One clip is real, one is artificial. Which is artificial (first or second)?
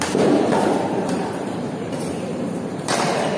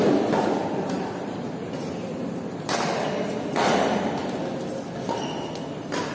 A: first